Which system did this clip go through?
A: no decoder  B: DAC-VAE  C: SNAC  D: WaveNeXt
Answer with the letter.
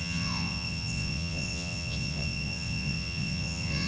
D